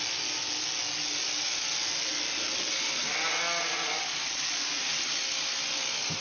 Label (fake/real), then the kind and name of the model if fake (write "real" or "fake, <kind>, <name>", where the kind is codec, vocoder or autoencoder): real